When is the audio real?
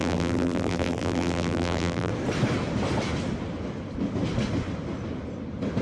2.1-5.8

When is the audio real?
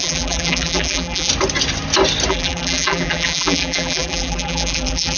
1.3-2.3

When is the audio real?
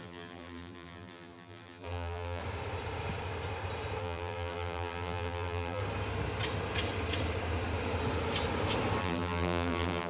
2.4-4.0; 5.8-9.0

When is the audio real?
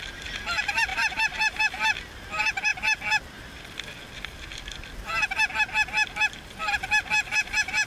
0.0-0.9; 1.6-7.3